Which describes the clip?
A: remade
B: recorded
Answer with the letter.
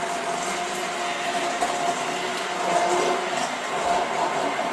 B